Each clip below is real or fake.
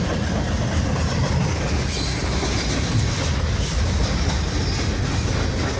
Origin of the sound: real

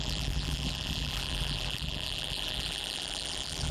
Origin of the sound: fake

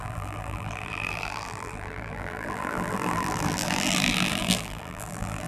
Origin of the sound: fake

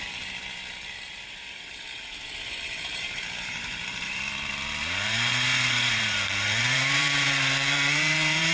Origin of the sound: fake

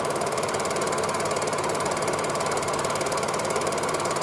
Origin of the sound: fake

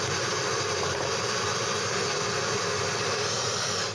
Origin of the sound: real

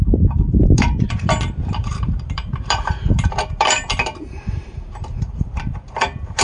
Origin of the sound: fake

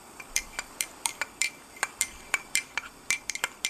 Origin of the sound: fake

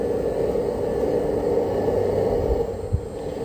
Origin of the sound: real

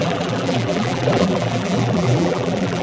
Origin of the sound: fake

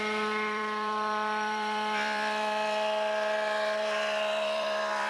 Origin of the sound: fake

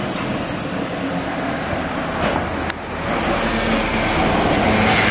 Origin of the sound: real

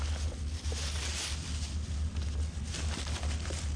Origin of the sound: real